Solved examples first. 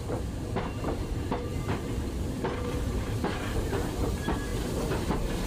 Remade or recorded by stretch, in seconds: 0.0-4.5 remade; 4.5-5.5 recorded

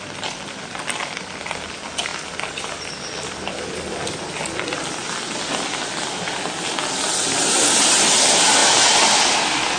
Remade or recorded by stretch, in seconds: 0.0-9.8 recorded

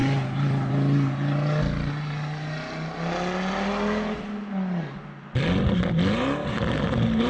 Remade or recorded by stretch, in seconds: 0.0-0.7 remade; 0.7-7.3 recorded

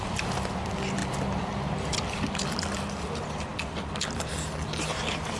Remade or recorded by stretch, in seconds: 0.0-1.0 recorded; 1.0-3.1 remade; 3.1-5.4 recorded

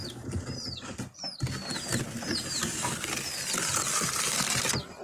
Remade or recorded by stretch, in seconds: 0.0-1.0 remade; 1.0-5.0 recorded

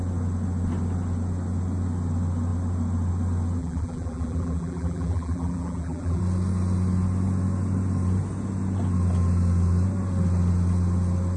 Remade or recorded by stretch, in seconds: 0.0-3.6 recorded; 3.6-6.2 remade; 6.2-11.4 recorded

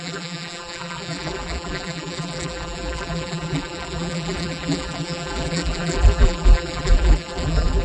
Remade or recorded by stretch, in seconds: 0.0-7.8 remade

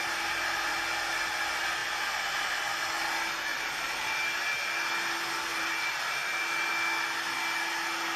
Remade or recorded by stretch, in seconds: 0.0-3.5 recorded; 3.5-4.2 remade; 4.2-5.5 recorded; 5.5-6.7 remade; 6.7-8.2 recorded